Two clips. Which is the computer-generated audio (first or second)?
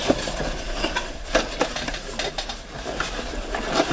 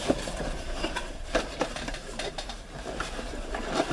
second